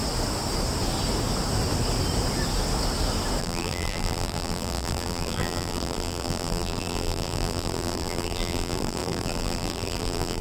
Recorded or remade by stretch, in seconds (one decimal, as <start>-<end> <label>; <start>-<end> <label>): 0.0-3.4 recorded; 3.4-10.4 remade

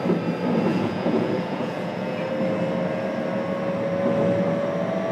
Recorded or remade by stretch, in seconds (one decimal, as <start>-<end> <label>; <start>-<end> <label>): 0.0-0.7 recorded; 0.7-2.3 remade; 2.3-5.1 recorded